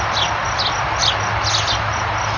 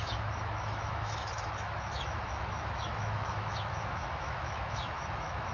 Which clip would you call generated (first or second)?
second